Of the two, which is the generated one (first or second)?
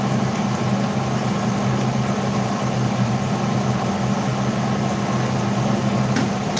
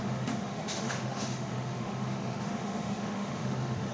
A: second